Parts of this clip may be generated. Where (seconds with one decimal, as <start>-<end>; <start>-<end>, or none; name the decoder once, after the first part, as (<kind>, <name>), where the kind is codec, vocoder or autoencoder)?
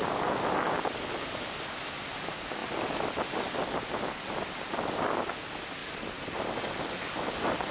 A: none